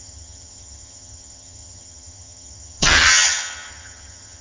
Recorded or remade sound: remade